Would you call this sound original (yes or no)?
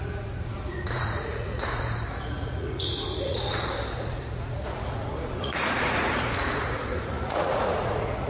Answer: no